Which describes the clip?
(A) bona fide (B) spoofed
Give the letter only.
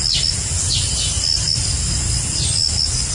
A